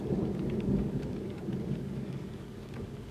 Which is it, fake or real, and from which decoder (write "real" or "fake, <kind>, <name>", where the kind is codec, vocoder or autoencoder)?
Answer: fake, codec, DAC